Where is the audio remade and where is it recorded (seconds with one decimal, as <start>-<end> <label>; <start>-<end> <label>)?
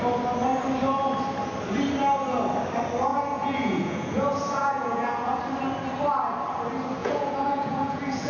0.0-3.1 recorded; 3.1-5.4 remade; 5.4-7.0 recorded; 7.0-8.3 remade